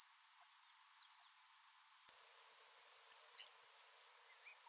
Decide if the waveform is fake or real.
real